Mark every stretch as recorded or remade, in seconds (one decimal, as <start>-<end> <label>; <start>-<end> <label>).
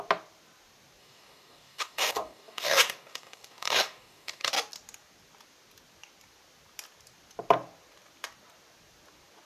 0.0-1.0 recorded; 1.0-4.5 remade; 4.5-9.5 recorded